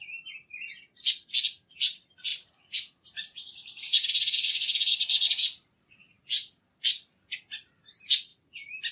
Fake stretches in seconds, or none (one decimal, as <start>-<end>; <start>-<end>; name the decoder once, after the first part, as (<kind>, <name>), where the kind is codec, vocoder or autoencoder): 2.3-6.2 (vocoder, Vocos)